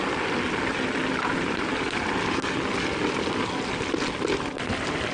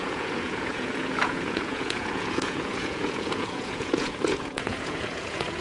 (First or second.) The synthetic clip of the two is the second